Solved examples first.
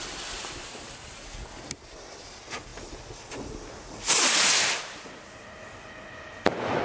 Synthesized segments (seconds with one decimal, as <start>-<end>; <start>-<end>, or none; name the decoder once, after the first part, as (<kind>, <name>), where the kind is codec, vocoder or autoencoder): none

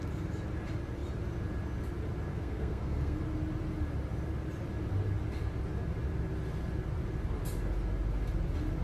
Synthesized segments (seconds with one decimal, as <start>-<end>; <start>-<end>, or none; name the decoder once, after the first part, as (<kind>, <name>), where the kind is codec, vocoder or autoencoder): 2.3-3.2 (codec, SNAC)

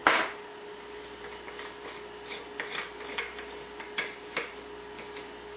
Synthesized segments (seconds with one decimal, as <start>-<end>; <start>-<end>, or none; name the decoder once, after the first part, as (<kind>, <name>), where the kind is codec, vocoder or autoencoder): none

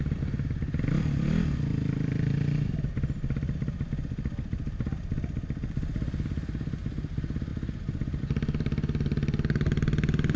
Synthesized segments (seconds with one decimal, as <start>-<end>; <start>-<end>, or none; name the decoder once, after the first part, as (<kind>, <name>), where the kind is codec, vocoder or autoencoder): none